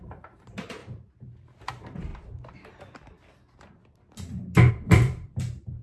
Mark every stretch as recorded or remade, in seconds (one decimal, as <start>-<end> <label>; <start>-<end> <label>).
0.0-2.1 remade; 2.1-4.7 recorded; 4.7-5.8 remade